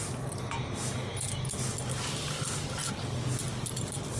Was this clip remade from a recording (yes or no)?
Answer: no